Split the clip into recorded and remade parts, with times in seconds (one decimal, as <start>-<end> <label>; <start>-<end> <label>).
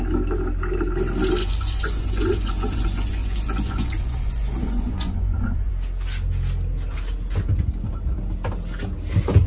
0.0-1.4 recorded; 1.4-5.7 remade; 5.7-9.5 recorded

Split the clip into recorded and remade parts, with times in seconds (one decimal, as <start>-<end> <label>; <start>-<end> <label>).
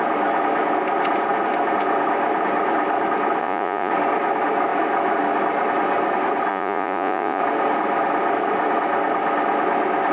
0.0-3.4 recorded; 3.4-3.9 remade; 3.9-6.5 recorded; 6.5-7.4 remade; 7.4-10.1 recorded